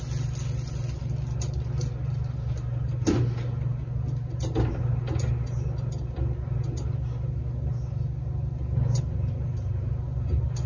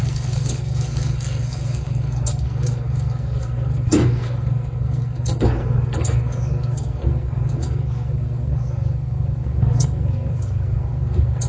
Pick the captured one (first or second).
first